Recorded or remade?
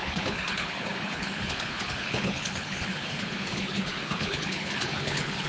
remade